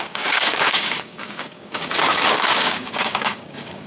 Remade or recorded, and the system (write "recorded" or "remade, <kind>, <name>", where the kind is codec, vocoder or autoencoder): remade, codec, DAC